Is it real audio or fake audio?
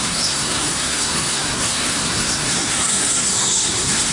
fake